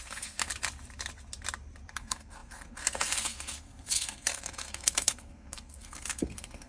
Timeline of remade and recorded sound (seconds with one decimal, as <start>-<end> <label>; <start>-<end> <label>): 0.0-0.5 remade; 0.5-1.9 recorded; 1.9-6.7 remade